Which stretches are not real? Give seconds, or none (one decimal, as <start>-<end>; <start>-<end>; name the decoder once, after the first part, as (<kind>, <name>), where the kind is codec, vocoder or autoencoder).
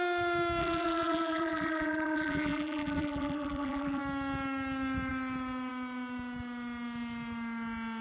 0.6-4.0 (vocoder, BigVGAN v2)